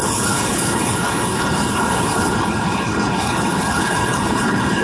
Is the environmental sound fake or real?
fake